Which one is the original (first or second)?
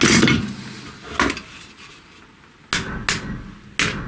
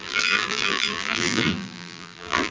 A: first